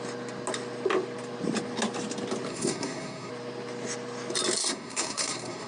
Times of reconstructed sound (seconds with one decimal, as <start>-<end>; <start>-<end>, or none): 2.5-3.3; 4.6-5.7